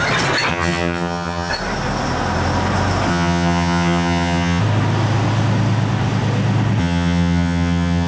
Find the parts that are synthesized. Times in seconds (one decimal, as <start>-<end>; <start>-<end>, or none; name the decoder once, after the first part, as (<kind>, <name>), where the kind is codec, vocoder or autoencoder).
0.5-1.5 (vocoder, HiFi-GAN); 3.1-4.6; 6.8-8.1